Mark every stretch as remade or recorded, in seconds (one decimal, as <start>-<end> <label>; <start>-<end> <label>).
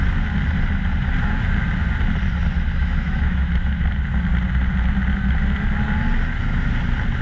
0.0-2.8 recorded; 2.8-3.5 remade; 3.5-7.2 recorded